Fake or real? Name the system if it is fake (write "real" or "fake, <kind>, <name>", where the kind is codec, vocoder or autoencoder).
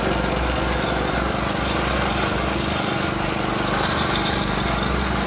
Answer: real